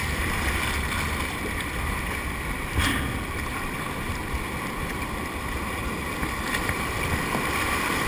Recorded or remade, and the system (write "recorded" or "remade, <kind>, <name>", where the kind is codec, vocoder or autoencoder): recorded